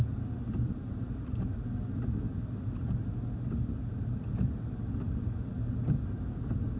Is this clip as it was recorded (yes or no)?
yes